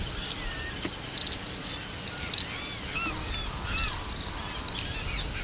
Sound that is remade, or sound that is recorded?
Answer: recorded